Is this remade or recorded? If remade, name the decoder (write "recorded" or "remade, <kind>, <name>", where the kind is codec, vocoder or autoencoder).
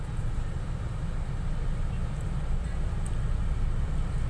recorded